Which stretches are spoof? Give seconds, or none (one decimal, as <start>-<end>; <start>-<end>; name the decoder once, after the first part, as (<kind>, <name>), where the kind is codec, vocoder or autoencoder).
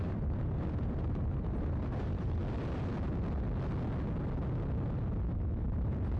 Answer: 0.0-2.4 (vocoder, BigVGAN v2); 5.6-6.2